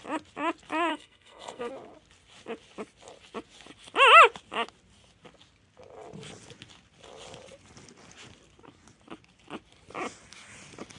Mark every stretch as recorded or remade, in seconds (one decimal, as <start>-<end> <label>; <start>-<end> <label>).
0.0-0.9 recorded; 0.9-1.7 remade; 1.7-11.0 recorded